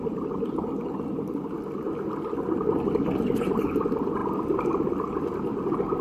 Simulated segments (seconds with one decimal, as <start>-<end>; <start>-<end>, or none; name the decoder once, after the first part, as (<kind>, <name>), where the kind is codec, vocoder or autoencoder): none